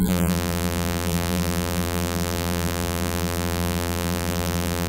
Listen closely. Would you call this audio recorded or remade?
remade